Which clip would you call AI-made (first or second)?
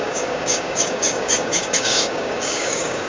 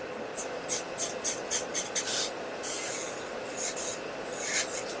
first